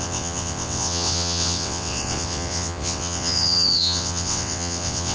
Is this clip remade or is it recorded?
remade